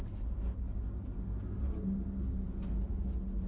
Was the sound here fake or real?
real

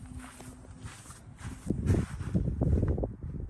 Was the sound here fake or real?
real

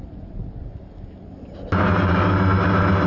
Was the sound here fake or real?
real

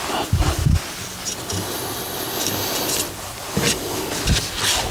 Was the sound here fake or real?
real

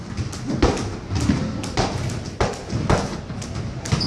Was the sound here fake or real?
real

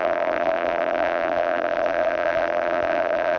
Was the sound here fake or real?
fake